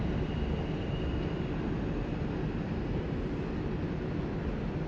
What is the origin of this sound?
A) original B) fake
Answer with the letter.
A